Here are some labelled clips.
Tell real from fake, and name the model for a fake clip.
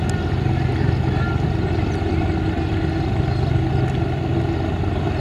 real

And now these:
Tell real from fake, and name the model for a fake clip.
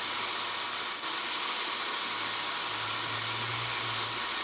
real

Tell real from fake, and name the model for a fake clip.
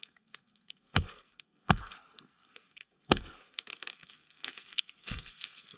fake, codec, SNAC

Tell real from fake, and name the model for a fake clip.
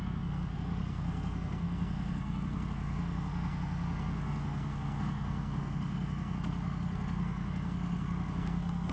fake, codec, SNAC